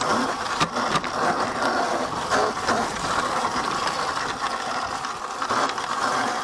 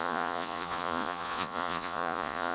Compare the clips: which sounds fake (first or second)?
second